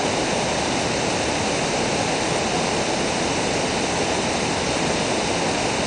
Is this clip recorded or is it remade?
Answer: recorded